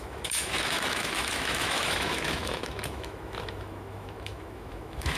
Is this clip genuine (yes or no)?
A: no